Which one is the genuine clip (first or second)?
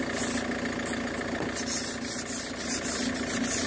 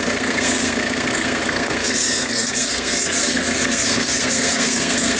first